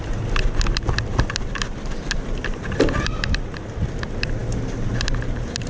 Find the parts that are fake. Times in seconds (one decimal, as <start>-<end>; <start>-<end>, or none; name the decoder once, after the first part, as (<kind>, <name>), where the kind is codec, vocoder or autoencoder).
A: none